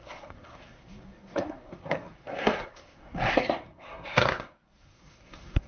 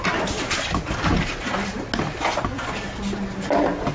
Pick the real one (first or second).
second